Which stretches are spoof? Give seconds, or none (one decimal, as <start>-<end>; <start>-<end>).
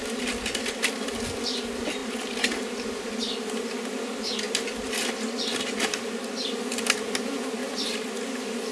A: none